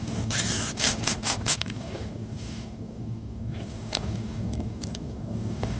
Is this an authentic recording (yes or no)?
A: no